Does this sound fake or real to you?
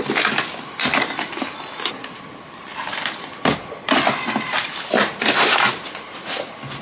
real